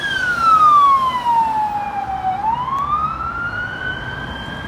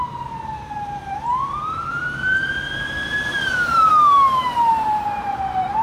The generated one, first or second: second